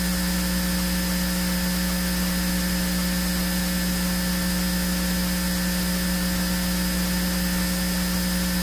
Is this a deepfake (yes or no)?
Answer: no